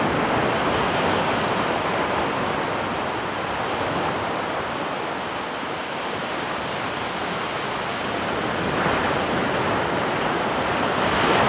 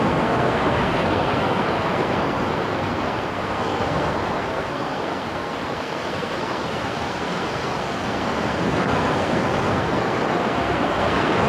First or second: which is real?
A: first